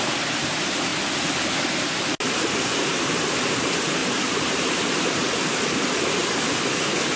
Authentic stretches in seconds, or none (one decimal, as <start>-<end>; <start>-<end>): 0.0-4.0; 5.3-7.2